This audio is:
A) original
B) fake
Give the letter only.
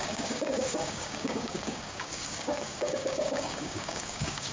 B